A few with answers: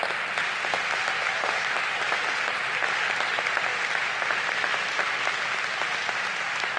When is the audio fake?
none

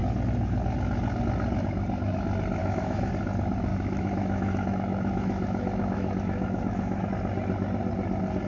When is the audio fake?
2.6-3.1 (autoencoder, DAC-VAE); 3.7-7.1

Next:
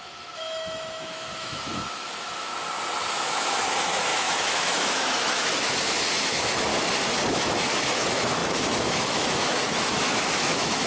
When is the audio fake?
0.0-2.5 (autoencoder, DAC-VAE); 3.1-6.7; 7.3-10.9

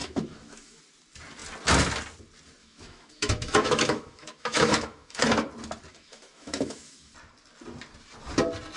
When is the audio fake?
0.0-0.8 (autoencoder, DAC-VAE); 2.6-5.2; 5.9-7.1